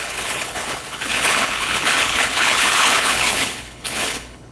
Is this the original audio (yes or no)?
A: no